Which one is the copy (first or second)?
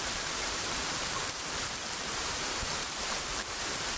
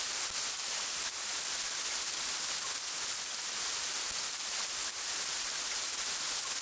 first